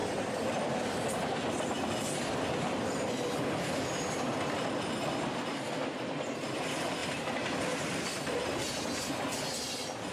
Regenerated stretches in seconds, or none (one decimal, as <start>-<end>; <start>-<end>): none